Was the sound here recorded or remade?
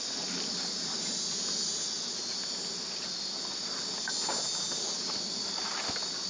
recorded